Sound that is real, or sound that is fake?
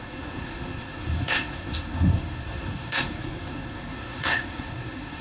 fake